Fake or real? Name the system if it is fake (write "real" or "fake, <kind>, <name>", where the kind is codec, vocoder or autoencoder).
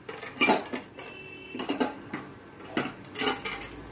real